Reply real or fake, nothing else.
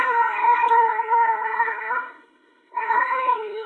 fake